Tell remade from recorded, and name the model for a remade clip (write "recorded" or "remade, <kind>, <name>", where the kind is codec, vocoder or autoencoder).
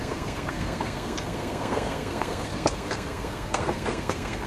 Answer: remade, codec, SNAC